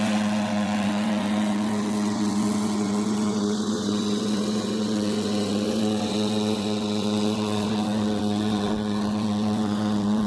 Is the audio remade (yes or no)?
yes